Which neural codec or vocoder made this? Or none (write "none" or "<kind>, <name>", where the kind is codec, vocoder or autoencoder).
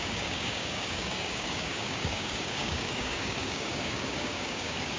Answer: codec, DAC